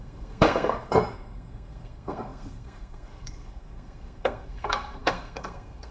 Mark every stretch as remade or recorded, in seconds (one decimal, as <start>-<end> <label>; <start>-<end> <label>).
0.0-5.9 remade